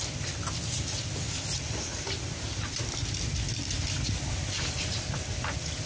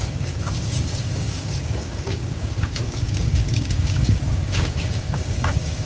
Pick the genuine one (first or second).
first